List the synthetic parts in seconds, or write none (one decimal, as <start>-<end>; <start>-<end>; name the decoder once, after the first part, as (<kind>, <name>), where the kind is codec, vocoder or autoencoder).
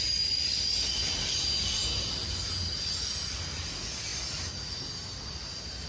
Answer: none